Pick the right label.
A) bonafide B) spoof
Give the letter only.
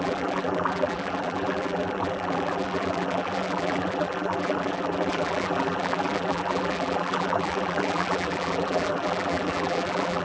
B